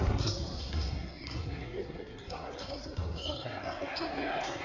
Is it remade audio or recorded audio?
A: remade